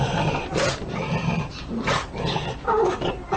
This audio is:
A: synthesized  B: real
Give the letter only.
A